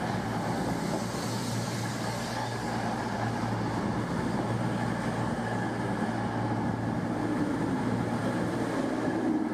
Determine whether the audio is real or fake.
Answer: real